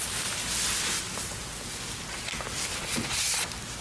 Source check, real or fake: real